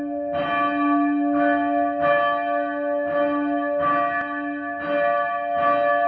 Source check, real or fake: real